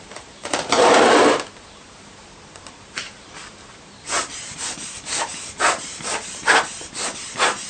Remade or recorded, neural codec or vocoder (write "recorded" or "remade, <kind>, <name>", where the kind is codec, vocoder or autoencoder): remade, vocoder, BigVGAN v2